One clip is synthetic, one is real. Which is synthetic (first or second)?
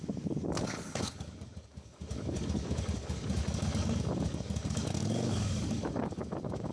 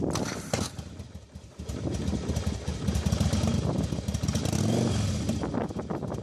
first